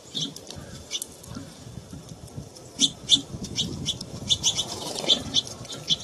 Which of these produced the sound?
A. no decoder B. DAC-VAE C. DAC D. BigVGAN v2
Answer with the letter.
A